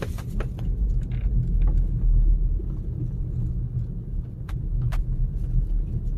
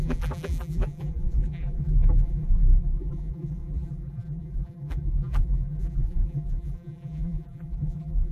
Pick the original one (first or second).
first